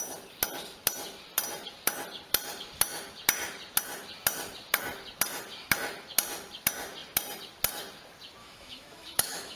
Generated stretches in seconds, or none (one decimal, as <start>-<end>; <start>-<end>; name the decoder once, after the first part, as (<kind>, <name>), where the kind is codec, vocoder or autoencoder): 8.4-9.6 (autoencoder, DAC-VAE)